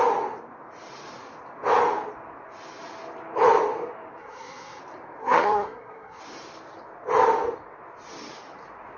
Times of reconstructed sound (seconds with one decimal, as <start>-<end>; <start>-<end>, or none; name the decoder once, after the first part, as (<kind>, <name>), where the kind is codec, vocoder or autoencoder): 4.2-4.8 (codec, SNAC); 5.2-6.2

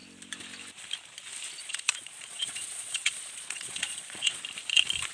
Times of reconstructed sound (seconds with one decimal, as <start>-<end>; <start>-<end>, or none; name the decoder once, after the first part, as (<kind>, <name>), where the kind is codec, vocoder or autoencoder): 1.6-4.4 (vocoder, Vocos)

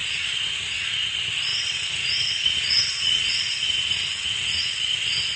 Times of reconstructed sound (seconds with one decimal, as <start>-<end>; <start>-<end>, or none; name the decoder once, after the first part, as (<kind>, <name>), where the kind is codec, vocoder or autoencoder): 0.0-0.9 (vocoder, Vocos); 1.5-4.7

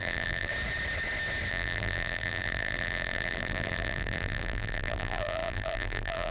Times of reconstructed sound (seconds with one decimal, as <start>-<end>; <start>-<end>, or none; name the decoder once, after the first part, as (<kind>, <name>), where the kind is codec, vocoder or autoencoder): 0.0-0.5 (vocoder, BigVGAN v2); 1.5-6.3

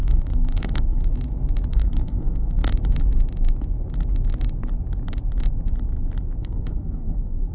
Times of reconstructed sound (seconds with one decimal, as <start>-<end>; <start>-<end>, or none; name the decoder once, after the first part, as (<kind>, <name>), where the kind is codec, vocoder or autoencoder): 0.0-1.0 (codec, SNAC); 1.7-2.6; 6.4-7.5